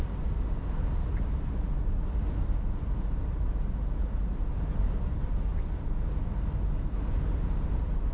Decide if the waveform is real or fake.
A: real